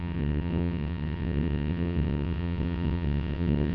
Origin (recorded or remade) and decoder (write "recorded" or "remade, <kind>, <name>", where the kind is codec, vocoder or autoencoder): remade, vocoder, WaveNeXt